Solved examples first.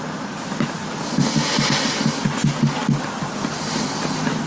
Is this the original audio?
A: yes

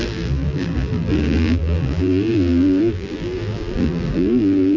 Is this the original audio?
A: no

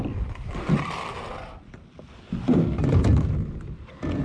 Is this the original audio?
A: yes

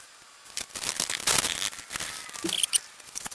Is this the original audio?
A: yes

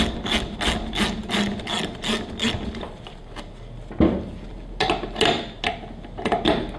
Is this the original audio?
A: yes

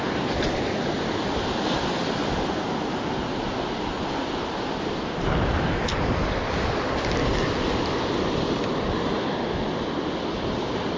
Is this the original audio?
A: yes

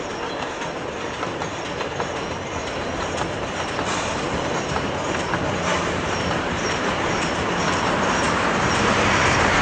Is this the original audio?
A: no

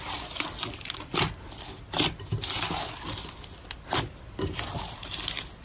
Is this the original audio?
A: yes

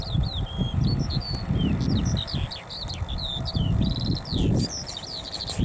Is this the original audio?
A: yes